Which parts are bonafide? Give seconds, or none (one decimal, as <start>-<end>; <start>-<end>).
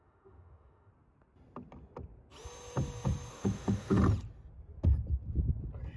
0.9-3.3; 4.0-6.0